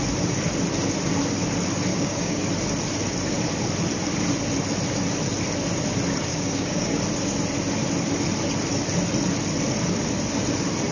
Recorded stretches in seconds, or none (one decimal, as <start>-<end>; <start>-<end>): 0.0-1.9; 2.4-6.3; 7.0-10.9